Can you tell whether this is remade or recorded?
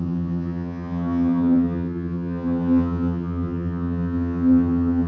remade